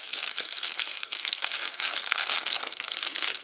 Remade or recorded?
remade